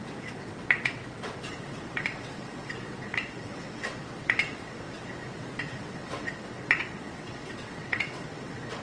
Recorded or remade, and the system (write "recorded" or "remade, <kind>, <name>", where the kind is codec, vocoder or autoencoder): remade, vocoder, WaveNeXt